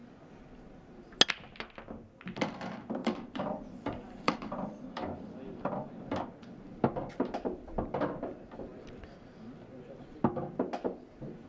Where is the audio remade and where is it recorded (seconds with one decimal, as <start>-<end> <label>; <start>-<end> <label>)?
0.0-3.0 recorded; 3.0-5.9 remade; 5.9-11.5 recorded